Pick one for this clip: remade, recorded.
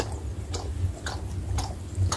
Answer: recorded